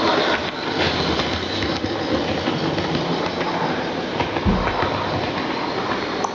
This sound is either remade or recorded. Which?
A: recorded